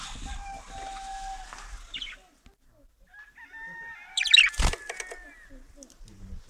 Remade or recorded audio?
recorded